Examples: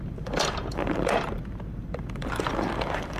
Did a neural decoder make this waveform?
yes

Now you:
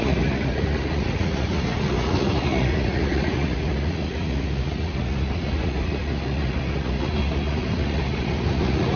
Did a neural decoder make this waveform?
yes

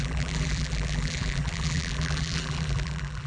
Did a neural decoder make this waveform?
yes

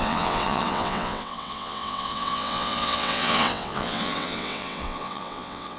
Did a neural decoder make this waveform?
yes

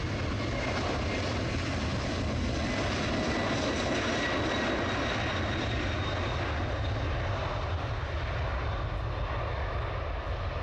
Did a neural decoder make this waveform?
no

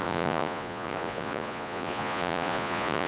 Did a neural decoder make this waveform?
yes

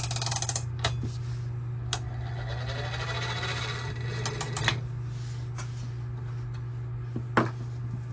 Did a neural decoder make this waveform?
no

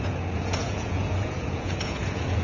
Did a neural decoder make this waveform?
yes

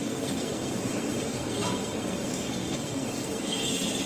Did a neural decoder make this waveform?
yes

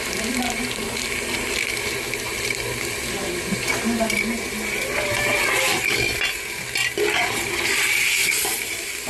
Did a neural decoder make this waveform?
no